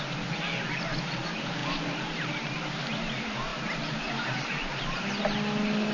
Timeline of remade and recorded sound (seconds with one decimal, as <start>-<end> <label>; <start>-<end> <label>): 0.0-5.9 recorded

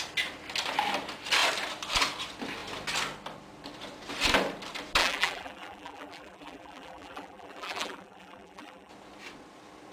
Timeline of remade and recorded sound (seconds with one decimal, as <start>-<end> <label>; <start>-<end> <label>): 0.0-5.0 recorded; 5.0-8.9 remade; 8.9-9.9 recorded

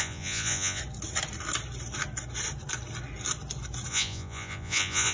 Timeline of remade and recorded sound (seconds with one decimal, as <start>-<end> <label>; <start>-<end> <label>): 0.0-0.8 remade; 0.8-3.9 recorded; 3.9-5.1 remade

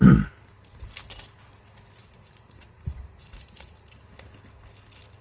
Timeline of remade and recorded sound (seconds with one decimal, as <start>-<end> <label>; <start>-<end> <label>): 0.0-2.0 recorded; 2.0-3.9 remade; 3.9-5.2 recorded

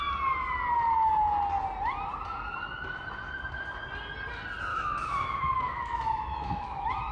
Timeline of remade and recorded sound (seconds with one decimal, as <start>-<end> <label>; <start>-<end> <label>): 0.0-4.7 recorded; 4.7-7.1 remade

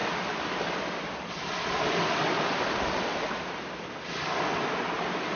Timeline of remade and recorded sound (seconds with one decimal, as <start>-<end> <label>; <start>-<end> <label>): 0.0-3.2 remade; 3.2-5.4 recorded

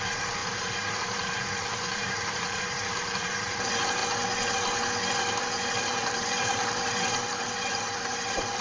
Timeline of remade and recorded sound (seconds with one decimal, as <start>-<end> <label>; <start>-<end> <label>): 0.0-4.0 remade; 4.0-5.4 recorded; 5.4-8.6 remade